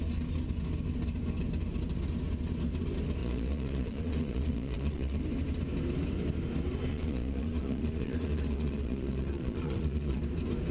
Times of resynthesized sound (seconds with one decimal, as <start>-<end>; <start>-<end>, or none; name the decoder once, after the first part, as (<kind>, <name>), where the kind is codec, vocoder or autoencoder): 3.2-5.2 (vocoder, Vocos); 6.9-10.2